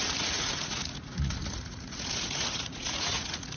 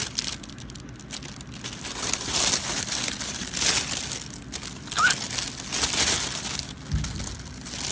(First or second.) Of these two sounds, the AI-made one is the first